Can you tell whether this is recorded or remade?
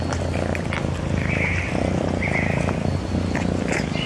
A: recorded